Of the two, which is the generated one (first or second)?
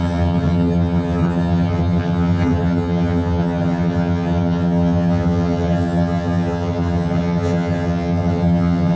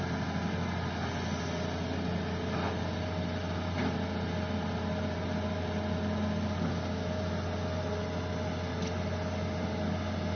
first